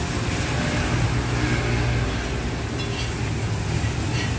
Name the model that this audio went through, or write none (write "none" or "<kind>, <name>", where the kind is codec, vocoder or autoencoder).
none